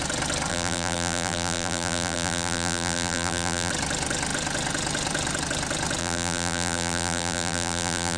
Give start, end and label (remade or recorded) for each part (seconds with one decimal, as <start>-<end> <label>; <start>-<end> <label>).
0.0-0.5 recorded; 0.5-3.7 remade; 3.7-6.0 recorded; 6.0-8.2 remade